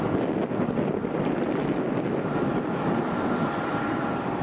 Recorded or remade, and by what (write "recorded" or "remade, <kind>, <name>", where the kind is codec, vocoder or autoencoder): recorded